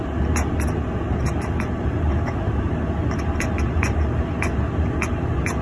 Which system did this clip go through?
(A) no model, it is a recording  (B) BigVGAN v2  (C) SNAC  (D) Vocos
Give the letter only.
A